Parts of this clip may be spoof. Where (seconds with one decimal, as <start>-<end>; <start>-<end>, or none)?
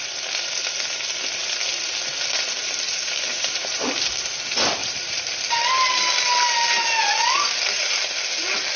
3.3-4.1; 4.8-5.6